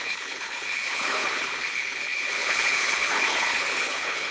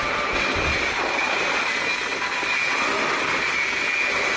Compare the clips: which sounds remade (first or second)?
first